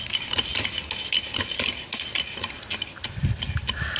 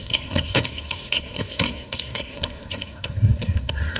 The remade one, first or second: second